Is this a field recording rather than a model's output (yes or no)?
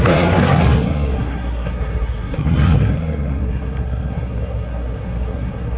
no